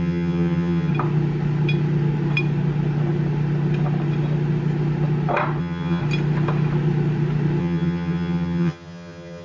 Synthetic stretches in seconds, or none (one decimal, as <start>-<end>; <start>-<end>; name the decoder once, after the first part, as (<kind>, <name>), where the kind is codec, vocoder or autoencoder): 0.0-0.9 (vocoder, HiFi-GAN); 5.6-6.0; 7.6-9.4